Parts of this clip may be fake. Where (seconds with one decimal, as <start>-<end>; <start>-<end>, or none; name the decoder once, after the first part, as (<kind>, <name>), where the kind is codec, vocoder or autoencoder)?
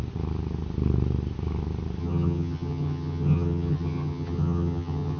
2.0-5.2 (vocoder, HiFi-GAN)